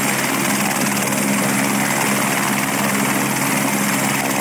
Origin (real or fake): real